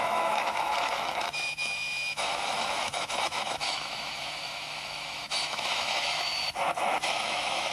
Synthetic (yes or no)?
yes